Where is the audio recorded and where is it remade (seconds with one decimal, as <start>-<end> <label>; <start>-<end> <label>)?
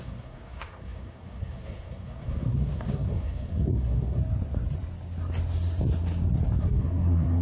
0.0-4.2 remade; 4.2-6.6 recorded; 6.6-7.4 remade